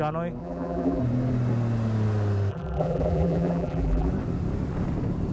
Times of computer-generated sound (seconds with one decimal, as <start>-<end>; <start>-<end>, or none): 0.4-1.0; 2.5-4.1